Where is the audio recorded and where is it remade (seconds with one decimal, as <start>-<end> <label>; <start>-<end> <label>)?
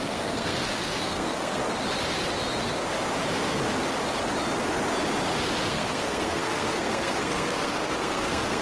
0.0-1.6 remade; 1.6-5.7 recorded; 5.7-8.6 remade